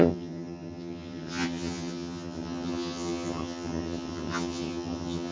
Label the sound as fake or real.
fake